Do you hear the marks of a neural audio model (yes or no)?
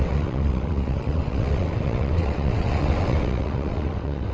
yes